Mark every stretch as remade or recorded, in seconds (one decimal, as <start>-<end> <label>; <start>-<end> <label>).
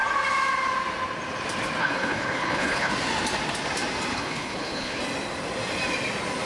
0.0-1.8 recorded; 1.8-2.9 remade; 2.9-4.1 recorded; 4.1-5.0 remade; 5.0-6.5 recorded